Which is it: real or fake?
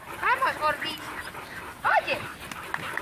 real